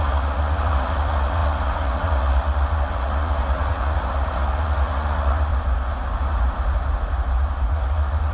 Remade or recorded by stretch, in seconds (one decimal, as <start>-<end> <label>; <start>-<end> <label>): 0.0-5.5 remade; 5.5-7.7 recorded; 7.7-8.3 remade